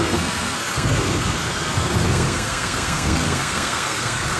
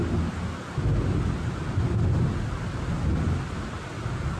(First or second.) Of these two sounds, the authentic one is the second